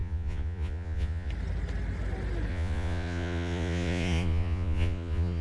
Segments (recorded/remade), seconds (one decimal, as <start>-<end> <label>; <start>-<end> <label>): 0.0-1.3 remade; 1.3-2.5 recorded; 2.5-5.4 remade